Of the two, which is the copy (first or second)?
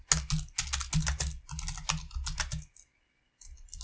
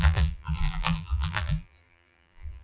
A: second